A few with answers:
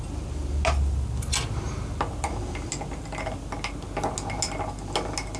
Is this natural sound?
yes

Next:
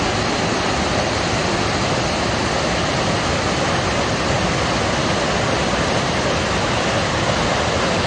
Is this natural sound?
yes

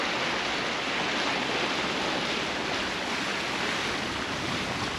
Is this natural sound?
yes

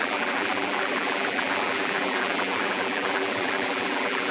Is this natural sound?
no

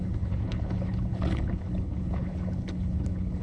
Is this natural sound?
no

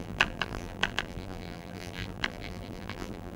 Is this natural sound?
no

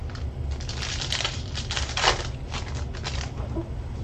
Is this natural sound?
yes